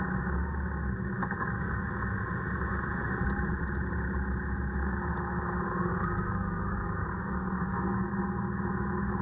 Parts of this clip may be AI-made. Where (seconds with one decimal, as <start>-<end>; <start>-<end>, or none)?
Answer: 1.2-1.8; 5.9-8.1